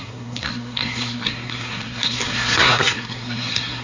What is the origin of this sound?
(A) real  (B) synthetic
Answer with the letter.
B